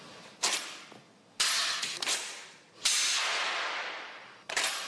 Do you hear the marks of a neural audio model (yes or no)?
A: no